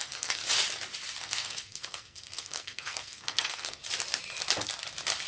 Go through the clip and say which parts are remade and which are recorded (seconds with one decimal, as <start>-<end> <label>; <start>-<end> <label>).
0.0-0.4 remade; 0.4-1.2 recorded; 1.2-3.8 remade; 3.8-5.3 recorded